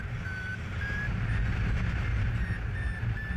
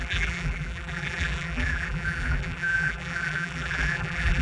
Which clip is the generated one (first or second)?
second